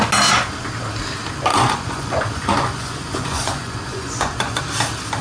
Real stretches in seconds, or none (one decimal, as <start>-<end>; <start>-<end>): 0.0-1.5; 4.6-5.2